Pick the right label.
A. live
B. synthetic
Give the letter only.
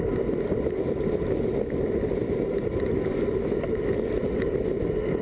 A